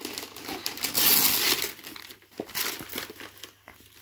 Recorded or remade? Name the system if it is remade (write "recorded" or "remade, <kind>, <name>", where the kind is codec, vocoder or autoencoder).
recorded